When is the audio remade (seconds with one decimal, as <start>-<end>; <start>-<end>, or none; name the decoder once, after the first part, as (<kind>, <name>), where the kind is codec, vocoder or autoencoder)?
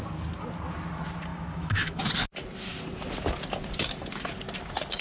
1.3-2.0 (autoencoder, DAC-VAE)